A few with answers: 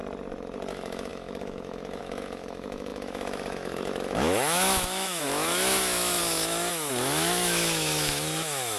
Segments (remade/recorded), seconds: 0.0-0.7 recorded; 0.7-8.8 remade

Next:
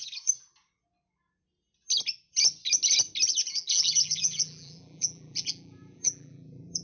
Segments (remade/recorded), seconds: 0.0-3.5 recorded; 3.5-6.8 remade

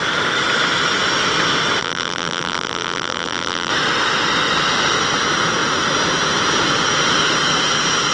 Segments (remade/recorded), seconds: 0.0-1.8 recorded; 1.8-3.7 remade; 3.7-8.1 recorded

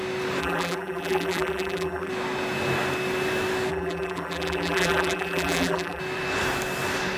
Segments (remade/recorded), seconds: 0.0-0.4 recorded; 0.4-2.1 remade; 2.1-3.7 recorded; 3.7-6.0 remade; 6.0-7.2 recorded

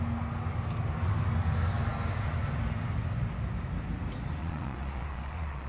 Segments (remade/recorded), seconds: 0.0-4.4 recorded; 4.4-5.7 remade

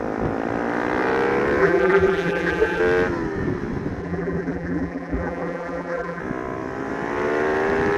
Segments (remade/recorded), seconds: 0.0-1.6 recorded; 1.6-2.8 remade; 2.8-4.0 recorded; 4.0-6.2 remade; 6.2-8.0 recorded